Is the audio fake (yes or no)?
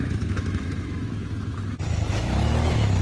yes